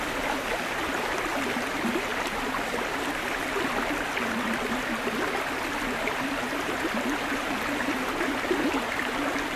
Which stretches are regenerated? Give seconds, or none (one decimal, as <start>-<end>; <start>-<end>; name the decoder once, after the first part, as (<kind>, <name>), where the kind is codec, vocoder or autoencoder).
none